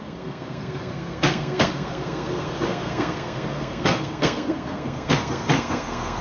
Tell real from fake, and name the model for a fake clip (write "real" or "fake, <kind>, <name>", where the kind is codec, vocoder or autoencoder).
fake, codec, SNAC